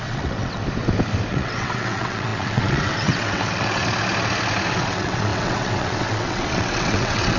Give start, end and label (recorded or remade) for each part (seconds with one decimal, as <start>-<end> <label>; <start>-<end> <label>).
0.0-0.6 remade; 0.6-1.3 recorded; 1.3-3.8 remade; 3.8-4.7 recorded; 4.7-7.4 remade